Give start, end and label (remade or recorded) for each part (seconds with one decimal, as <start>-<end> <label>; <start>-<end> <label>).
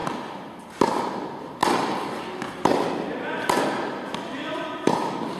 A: 0.0-1.0 recorded; 1.0-1.6 remade; 1.6-3.6 recorded; 3.6-5.4 remade